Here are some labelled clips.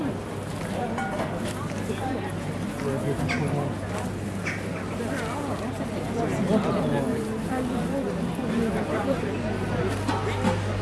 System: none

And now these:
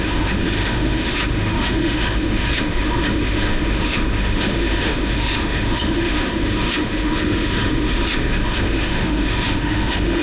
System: autoencoder, DAC-VAE